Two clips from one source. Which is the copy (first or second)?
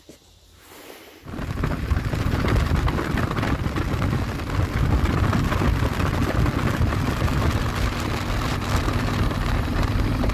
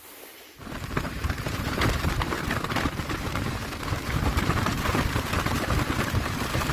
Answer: second